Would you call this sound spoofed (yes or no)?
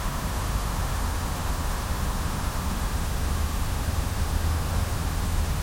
yes